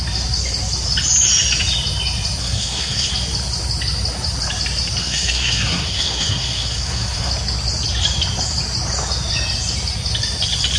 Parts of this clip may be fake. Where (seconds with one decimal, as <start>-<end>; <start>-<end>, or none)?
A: 2.4-3.1; 5.0-7.3